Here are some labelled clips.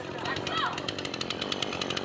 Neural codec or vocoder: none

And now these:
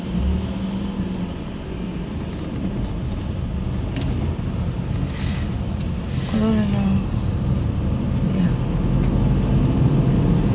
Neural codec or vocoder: none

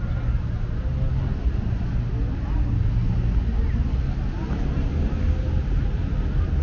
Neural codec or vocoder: none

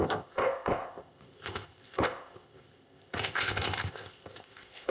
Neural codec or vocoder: codec, ZipCodec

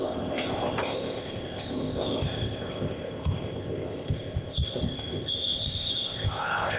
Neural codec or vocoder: codec, ZipCodec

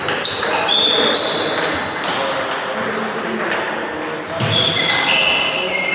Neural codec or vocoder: none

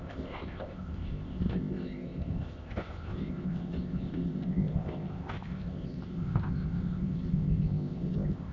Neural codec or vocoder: codec, ZipCodec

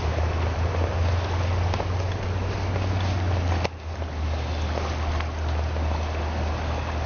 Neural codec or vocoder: none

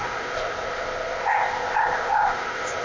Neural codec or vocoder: codec, ZipCodec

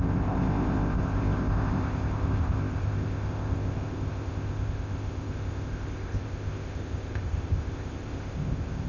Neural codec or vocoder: codec, ZipCodec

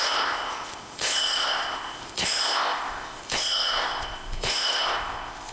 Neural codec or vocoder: codec, ZipCodec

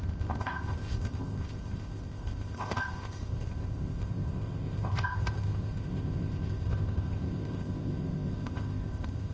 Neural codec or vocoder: codec, ZipCodec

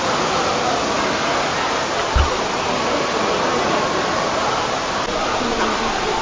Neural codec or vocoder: none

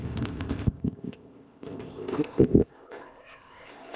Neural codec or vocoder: codec, ZipCodec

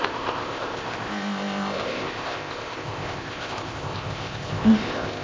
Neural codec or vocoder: codec, ZipCodec